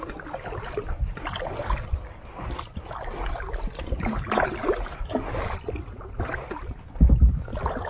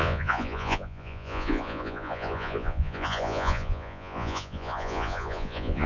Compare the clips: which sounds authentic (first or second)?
first